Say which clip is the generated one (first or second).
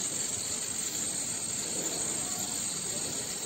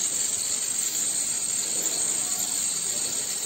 first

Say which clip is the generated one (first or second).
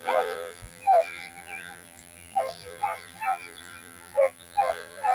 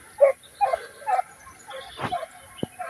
first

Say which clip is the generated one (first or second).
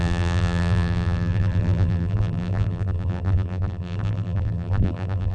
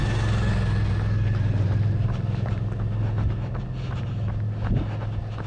first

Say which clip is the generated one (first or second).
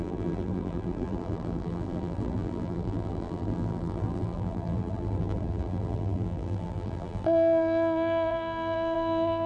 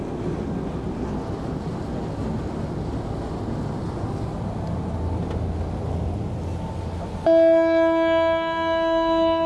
first